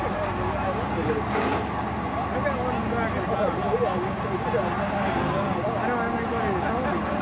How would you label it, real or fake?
real